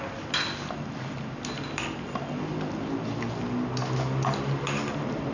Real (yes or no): yes